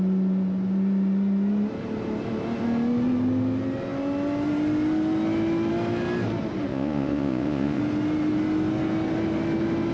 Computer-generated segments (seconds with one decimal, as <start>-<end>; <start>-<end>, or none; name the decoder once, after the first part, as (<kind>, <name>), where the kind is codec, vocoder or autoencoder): 6.7-7.8 (vocoder, Vocos)